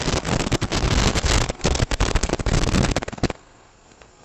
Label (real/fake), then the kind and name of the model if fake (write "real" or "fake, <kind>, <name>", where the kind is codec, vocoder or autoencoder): fake, codec, SNAC